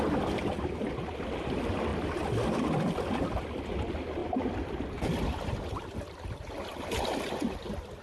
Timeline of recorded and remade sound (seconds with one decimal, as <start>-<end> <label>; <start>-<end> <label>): 0.0-8.0 recorded